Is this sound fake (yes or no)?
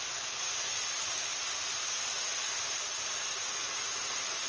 no